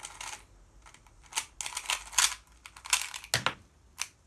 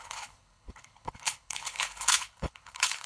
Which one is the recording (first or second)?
first